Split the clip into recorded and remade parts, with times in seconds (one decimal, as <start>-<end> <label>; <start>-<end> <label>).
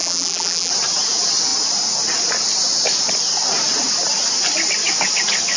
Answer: 0.0-0.7 remade; 0.7-5.6 recorded